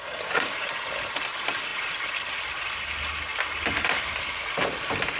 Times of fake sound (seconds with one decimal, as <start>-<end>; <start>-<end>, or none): none